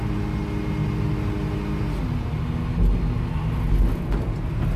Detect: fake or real real